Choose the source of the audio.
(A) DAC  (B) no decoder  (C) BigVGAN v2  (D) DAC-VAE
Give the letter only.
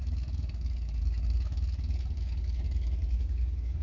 A